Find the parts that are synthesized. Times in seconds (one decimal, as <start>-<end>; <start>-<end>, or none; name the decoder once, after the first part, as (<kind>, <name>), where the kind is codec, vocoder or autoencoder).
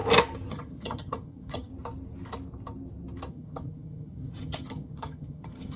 0.5-1.7 (vocoder, HiFi-GAN); 3.3-5.8